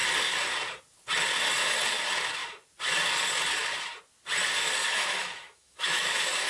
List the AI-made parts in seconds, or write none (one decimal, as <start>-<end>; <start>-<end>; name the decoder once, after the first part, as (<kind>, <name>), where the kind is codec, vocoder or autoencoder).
4.8-6.5 (autoencoder, DAC-VAE)